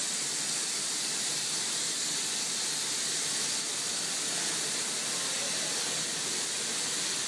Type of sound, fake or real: real